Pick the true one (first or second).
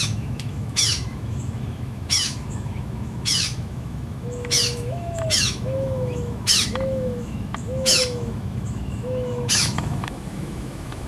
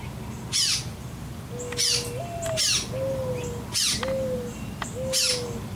second